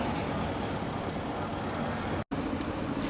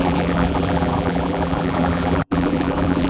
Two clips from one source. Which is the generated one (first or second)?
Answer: second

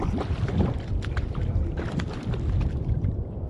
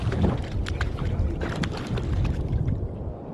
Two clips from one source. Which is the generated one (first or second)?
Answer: first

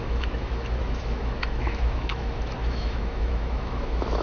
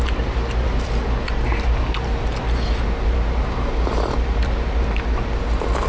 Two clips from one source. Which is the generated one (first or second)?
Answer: first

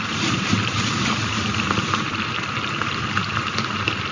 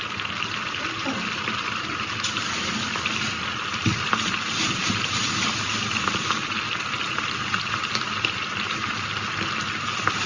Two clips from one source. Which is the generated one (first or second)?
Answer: first